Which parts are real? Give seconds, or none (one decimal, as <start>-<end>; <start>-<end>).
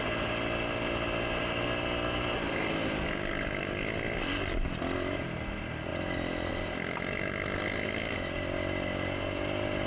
0.0-9.9